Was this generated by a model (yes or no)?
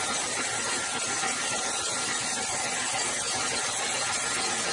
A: no